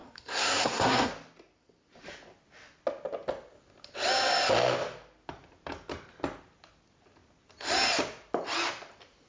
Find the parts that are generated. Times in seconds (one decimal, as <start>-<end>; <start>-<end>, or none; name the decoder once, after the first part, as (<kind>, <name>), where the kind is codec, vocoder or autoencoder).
0.0-1.1 (codec, SNAC)